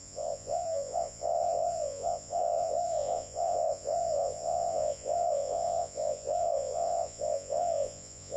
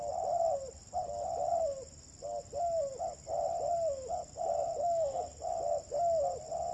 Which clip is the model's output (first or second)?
first